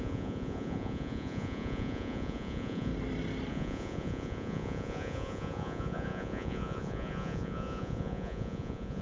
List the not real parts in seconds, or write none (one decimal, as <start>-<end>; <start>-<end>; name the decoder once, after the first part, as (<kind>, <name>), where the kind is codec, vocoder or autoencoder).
0.0-2.9 (vocoder, Vocos); 3.5-9.0